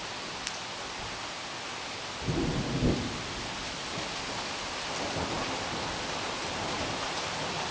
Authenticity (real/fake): real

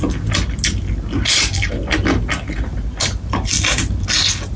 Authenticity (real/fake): real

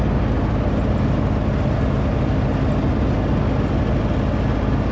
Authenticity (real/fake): real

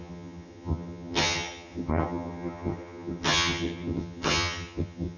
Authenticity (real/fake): fake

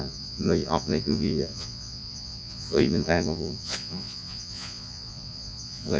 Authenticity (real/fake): fake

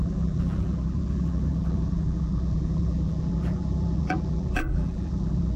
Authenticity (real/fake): fake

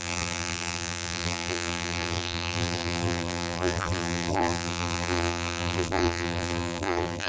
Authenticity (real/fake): fake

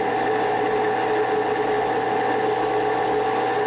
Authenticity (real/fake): real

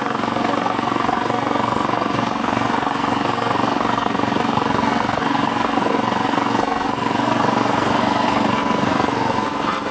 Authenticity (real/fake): fake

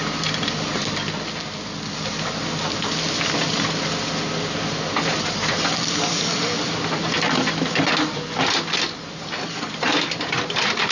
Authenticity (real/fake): real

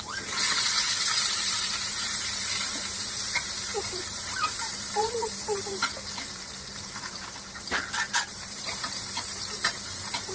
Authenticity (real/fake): fake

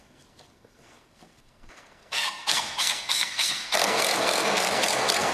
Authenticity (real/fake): fake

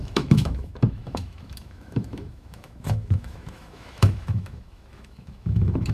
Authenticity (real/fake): fake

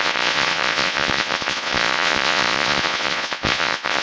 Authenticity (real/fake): fake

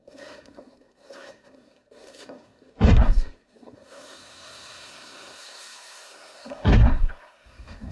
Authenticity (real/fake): fake